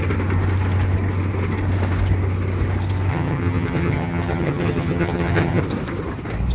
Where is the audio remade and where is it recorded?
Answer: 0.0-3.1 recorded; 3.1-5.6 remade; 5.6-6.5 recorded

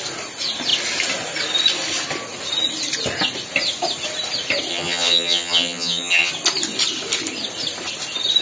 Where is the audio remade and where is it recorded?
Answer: 0.0-4.7 recorded; 4.7-6.3 remade; 6.3-8.4 recorded

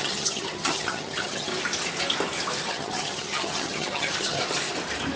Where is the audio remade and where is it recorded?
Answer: 0.0-1.5 remade; 1.5-2.7 recorded; 2.7-4.4 remade; 4.4-5.2 recorded

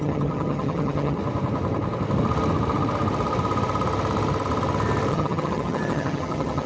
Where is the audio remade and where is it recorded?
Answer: 0.0-1.2 remade; 1.2-5.1 recorded; 5.1-6.7 remade

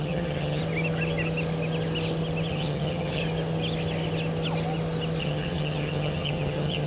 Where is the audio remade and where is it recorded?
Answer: 0.0-0.6 remade; 0.6-2.5 recorded; 2.5-3.2 remade; 3.2-5.2 recorded; 5.2-6.9 remade

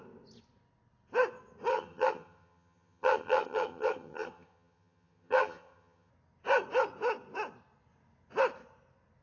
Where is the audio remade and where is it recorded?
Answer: 0.0-1.7 recorded; 1.7-6.1 remade; 6.1-9.2 recorded

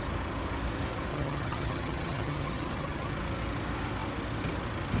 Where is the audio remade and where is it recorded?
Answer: 0.0-1.1 recorded; 1.1-3.1 remade; 3.1-5.0 recorded

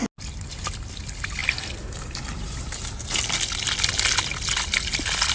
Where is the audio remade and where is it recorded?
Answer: 0.0-5.3 recorded